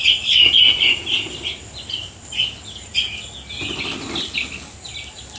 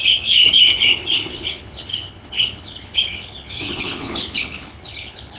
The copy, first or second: second